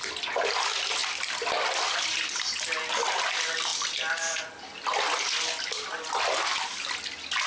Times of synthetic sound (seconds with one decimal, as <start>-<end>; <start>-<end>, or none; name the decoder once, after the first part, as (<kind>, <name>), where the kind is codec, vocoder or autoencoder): none